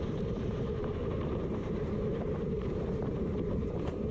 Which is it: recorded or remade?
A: remade